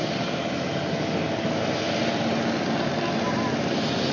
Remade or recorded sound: recorded